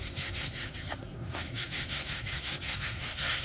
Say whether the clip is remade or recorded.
remade